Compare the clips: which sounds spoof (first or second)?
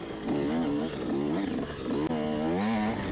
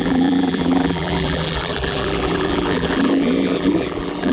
second